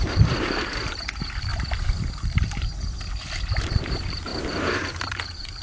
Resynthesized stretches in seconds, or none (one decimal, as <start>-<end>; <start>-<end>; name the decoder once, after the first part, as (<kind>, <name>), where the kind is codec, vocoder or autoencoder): 0.0-1.5 (vocoder, BigVGAN v2); 2.1-2.7; 3.2-5.6